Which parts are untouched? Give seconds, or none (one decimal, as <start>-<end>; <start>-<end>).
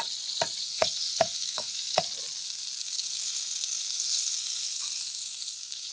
0.0-0.6; 2.0-2.4